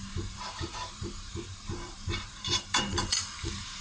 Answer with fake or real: fake